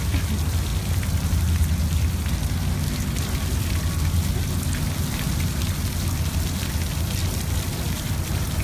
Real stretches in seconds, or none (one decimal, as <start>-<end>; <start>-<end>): 0.0-0.7; 2.3-7.2

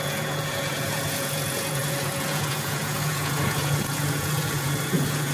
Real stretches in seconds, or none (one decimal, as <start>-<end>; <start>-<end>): none

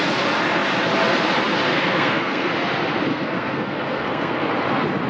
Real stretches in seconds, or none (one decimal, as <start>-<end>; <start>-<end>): 0.0-1.7; 2.5-3.1; 4.5-5.1

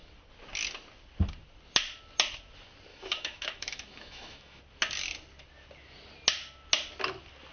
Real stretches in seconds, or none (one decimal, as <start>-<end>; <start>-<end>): 0.0-2.9; 4.6-7.5

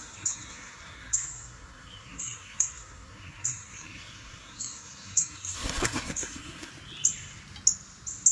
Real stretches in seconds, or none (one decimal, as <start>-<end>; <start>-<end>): 6.7-8.3

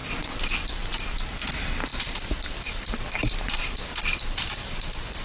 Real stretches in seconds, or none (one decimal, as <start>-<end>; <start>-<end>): 0.0-1.4

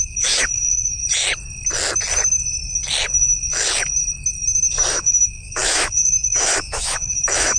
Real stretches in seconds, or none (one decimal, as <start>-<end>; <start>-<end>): 1.0-4.9

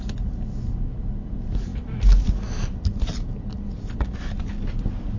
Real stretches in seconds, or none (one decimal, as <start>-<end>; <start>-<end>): 0.0-5.2